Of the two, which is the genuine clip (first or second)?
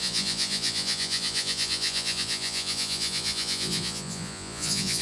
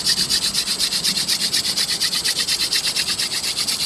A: second